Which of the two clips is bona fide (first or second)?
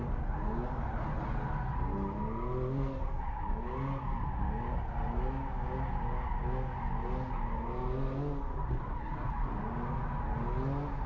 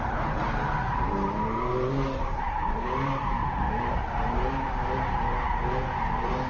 first